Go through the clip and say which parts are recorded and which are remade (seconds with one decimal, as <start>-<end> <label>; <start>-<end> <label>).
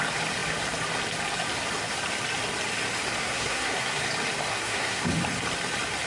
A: 0.0-3.2 recorded; 3.2-4.0 remade; 4.0-4.5 recorded; 4.5-5.0 remade; 5.0-6.1 recorded